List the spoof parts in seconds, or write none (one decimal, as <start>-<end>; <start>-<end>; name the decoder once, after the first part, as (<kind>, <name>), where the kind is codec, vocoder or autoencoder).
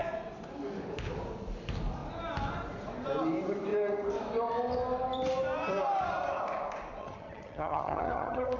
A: 7.0-8.6 (vocoder, HiFi-GAN)